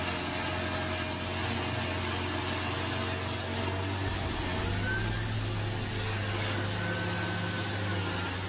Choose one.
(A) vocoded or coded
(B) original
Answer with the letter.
B